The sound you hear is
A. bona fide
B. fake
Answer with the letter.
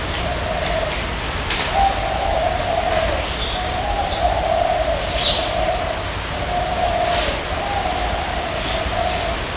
A